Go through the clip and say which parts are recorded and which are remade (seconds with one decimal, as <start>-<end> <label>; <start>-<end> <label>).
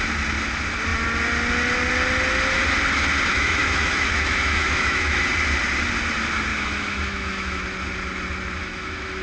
0.0-3.3 recorded; 3.3-5.2 remade; 5.2-6.5 recorded; 6.5-7.6 remade; 7.6-8.6 recorded; 8.6-9.2 remade